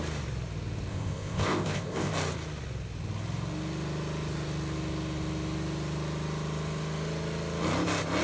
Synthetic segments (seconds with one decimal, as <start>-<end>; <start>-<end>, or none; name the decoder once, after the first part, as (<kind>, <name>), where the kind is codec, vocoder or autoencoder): 0.9-2.1 (codec, ZipCodec)